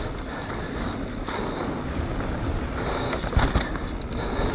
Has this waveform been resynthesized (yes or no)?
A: no